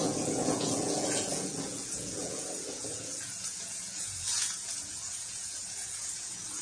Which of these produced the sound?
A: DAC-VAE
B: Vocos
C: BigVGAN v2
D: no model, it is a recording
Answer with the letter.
B